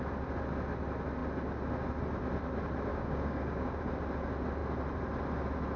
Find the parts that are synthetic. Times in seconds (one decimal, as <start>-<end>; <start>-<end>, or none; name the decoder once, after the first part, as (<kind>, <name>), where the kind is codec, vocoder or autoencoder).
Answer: 2.9-3.8 (codec, DAC)